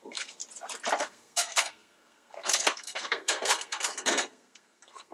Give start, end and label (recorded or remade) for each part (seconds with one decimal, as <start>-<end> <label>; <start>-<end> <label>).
0.0-0.4 remade; 0.4-1.0 recorded; 1.0-5.1 remade